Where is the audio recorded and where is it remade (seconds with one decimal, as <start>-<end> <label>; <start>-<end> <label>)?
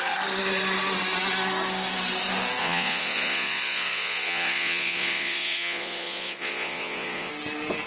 0.0-2.6 recorded; 2.6-7.3 remade; 7.3-7.9 recorded